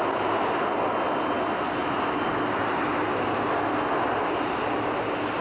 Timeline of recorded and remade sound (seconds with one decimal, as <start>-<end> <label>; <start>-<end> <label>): 0.0-5.4 recorded